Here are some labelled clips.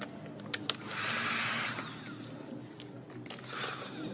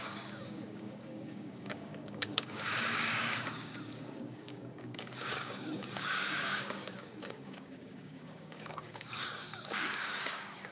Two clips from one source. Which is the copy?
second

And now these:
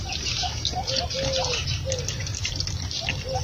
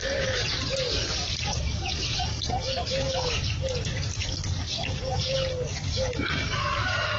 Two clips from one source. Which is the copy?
second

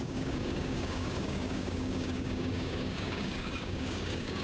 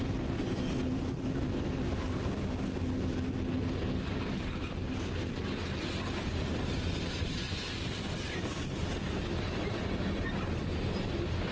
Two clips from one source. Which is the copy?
first